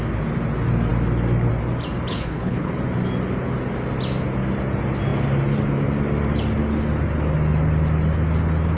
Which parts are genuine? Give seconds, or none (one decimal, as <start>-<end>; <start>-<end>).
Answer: 0.0-2.1; 2.7-8.8